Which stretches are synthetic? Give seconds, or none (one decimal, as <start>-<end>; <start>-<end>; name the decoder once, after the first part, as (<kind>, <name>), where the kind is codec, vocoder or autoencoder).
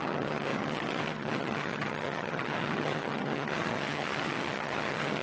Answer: 0.0-5.2 (vocoder, HiFi-GAN)